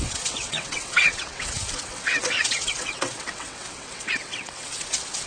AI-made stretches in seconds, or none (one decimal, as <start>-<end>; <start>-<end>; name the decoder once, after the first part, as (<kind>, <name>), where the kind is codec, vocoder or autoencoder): 0.0-5.3 (vocoder, WaveNeXt)